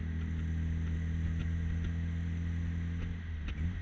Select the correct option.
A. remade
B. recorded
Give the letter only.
B